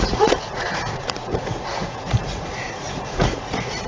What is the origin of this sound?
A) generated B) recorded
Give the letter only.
A